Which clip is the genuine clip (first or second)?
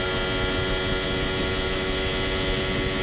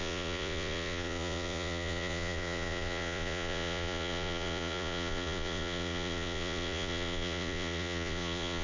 first